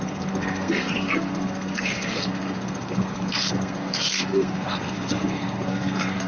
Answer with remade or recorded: remade